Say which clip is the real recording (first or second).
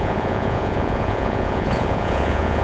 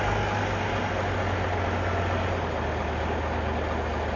second